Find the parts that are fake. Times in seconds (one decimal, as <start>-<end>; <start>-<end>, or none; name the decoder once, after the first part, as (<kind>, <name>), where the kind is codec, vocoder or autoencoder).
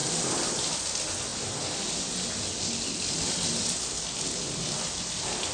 none